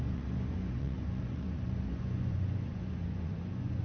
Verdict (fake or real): fake